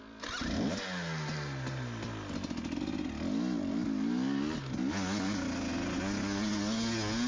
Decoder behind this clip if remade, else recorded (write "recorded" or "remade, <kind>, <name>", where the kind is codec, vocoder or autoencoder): recorded